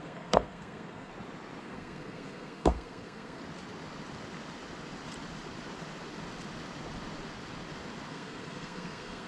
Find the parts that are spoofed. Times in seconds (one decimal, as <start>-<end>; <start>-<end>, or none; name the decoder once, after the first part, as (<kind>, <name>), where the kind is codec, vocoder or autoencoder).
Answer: 0.0-1.1 (codec, SNAC); 1.6-3.4; 8.1-9.3